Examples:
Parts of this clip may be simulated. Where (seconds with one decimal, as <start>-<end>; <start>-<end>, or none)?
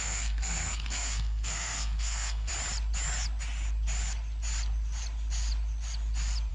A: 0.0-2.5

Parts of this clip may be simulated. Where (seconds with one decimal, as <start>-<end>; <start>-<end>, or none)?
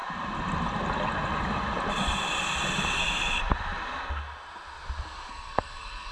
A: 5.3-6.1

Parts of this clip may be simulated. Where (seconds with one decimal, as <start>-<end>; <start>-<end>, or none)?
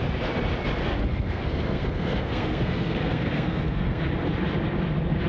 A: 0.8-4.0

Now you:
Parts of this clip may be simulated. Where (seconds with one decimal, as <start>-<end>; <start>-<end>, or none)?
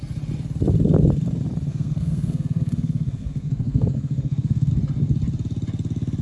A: 1.7-4.7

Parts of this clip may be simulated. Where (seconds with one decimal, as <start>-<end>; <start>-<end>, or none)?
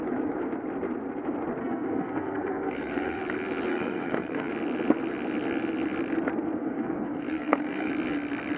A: 1.6-3.2; 3.7-4.5; 6.6-7.9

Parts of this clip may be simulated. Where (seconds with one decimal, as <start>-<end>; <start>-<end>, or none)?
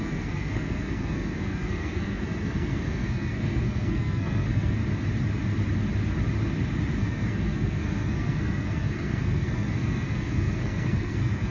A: 0.0-4.8; 7.0-11.5